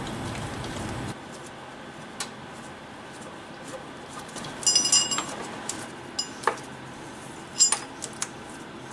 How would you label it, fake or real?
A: real